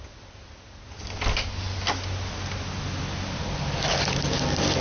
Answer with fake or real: real